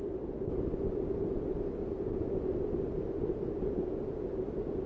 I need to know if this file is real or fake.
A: real